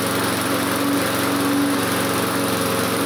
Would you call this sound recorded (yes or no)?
yes